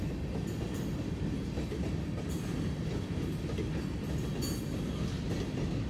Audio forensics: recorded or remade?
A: recorded